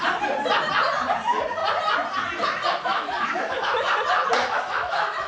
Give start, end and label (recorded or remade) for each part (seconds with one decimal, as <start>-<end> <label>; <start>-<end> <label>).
0.0-2.9 recorded; 2.9-3.9 remade; 3.9-4.4 recorded; 4.4-5.3 remade